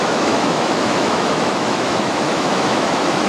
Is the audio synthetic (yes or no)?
yes